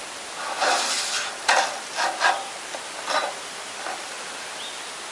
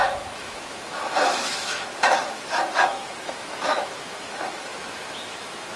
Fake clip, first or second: second